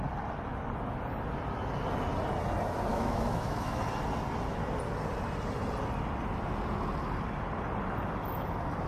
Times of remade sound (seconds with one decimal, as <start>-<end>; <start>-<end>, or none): 2.9-3.8